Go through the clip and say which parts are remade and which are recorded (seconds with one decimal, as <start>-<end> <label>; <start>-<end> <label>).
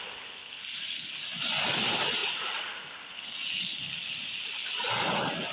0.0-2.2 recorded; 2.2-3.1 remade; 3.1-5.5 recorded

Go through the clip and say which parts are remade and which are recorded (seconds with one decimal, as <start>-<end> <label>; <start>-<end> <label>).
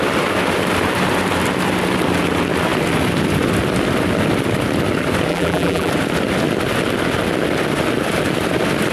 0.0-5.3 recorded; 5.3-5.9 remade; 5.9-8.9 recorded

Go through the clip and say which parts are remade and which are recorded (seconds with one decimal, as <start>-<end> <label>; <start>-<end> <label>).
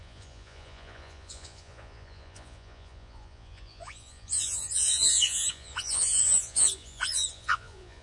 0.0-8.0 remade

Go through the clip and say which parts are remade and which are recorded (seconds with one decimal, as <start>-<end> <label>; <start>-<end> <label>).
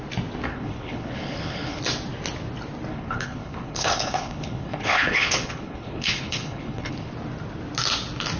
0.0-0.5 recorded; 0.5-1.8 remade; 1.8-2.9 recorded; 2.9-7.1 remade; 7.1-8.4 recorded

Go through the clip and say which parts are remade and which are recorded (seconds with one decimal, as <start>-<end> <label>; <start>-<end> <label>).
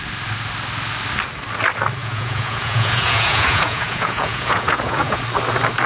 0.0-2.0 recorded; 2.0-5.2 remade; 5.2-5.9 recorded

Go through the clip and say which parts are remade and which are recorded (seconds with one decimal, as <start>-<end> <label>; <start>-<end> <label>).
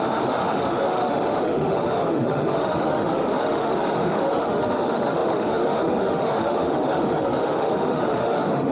0.0-8.7 remade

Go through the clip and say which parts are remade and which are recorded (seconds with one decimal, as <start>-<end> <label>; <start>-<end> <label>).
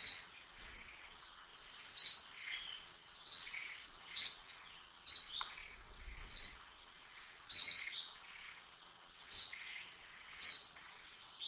0.0-1.5 remade; 1.5-2.6 recorded; 2.6-11.5 remade